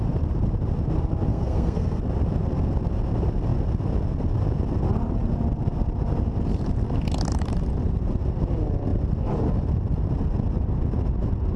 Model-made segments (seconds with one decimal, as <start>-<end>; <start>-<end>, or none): 1.3-2.0